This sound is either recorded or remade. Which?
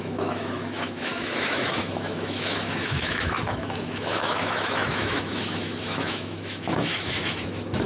remade